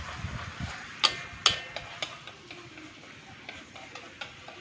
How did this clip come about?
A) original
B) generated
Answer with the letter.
A